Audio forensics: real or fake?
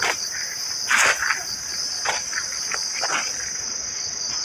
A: real